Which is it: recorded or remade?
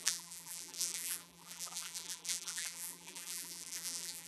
remade